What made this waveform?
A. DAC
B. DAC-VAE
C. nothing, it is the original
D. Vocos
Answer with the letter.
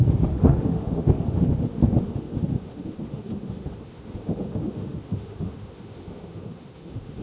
B